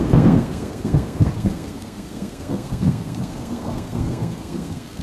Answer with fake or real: fake